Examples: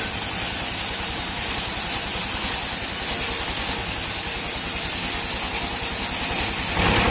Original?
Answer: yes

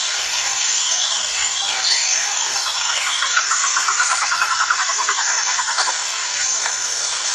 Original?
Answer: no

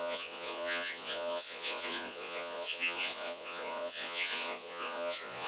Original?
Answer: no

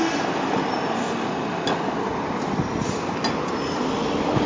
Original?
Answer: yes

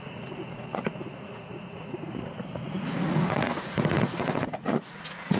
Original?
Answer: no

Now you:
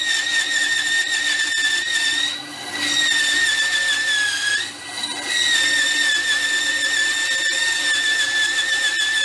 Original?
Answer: yes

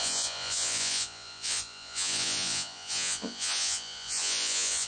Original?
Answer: no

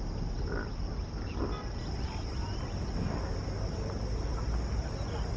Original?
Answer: yes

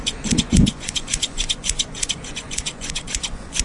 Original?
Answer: no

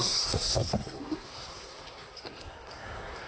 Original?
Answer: no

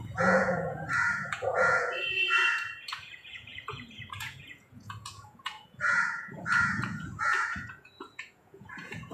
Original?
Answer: no